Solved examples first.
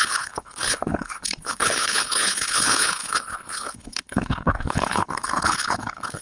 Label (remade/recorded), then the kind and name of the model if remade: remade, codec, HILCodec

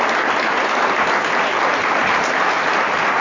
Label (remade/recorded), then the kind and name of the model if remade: recorded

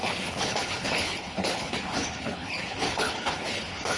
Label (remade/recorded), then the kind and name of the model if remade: remade, codec, HILCodec